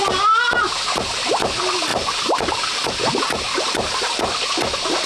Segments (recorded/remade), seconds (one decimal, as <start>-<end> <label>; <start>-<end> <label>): 0.0-1.9 recorded; 1.9-4.3 remade; 4.3-5.1 recorded

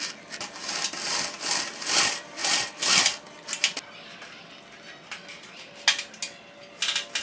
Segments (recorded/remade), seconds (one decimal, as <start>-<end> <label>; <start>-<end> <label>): 0.0-7.2 recorded

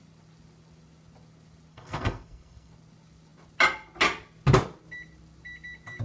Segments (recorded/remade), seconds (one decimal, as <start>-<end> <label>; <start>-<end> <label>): 0.0-1.7 recorded; 1.7-2.7 remade; 2.7-6.0 recorded

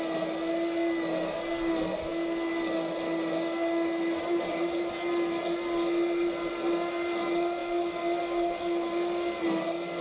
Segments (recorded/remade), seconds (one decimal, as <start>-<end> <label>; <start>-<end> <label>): 0.0-10.0 recorded